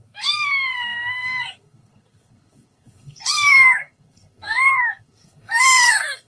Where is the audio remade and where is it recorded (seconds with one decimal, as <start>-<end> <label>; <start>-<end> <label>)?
0.0-6.3 remade